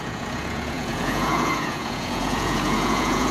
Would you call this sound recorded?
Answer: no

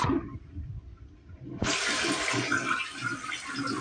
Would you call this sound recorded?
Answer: yes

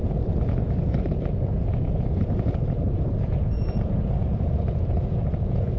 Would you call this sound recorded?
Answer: no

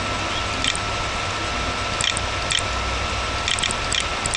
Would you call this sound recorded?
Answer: yes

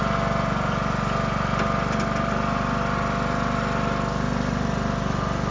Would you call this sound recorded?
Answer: yes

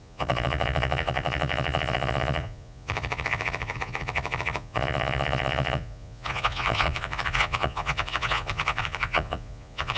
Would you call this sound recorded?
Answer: no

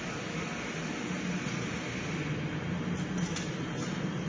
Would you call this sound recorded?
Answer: yes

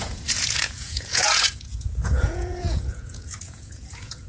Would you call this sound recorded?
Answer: no